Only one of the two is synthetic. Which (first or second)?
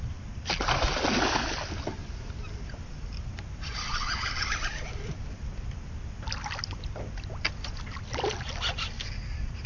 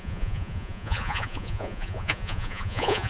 second